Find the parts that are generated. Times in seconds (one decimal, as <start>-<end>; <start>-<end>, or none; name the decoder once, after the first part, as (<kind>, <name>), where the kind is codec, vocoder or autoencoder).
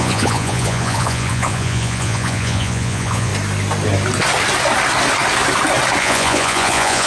0.0-3.3 (vocoder, Vocos); 6.0-7.1